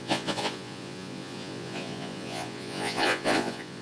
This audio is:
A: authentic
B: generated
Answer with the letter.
B